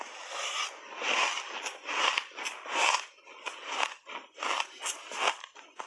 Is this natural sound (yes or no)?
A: yes